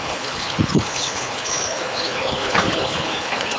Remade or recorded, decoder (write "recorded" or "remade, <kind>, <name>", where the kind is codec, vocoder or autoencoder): remade, codec, HILCodec